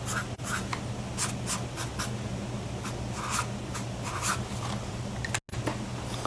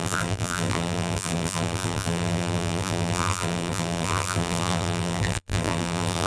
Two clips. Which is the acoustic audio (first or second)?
first